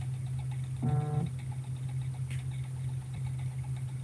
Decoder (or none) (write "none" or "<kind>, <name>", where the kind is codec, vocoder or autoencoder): none